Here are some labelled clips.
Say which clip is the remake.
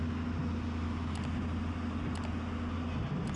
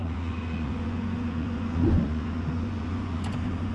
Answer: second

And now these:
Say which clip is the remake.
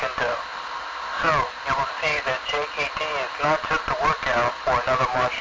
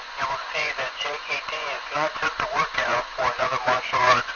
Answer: second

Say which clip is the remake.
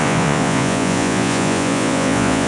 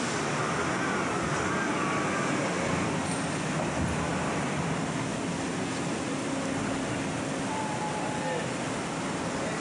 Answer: first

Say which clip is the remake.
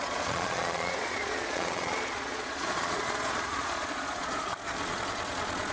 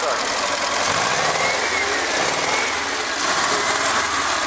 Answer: first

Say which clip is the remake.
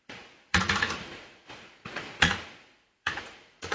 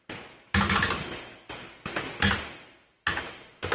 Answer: first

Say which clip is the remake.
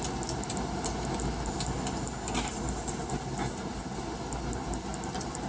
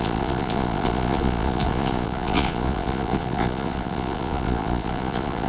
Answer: second